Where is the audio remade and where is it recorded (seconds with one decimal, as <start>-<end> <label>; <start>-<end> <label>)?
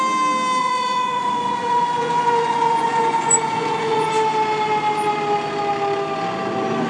0.0-0.6 recorded; 0.6-4.1 remade; 4.1-6.9 recorded